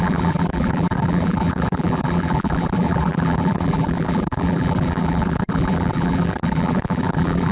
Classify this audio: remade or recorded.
remade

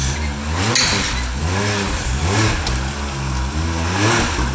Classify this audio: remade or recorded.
recorded